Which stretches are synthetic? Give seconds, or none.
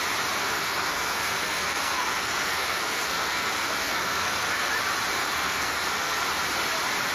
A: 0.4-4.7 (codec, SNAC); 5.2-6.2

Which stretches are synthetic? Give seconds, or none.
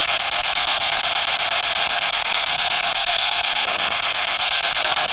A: 0.0-1.0 (codec, SNAC); 1.8-5.1